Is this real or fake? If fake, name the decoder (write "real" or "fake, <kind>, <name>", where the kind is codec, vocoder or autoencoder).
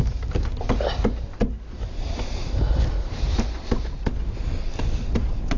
real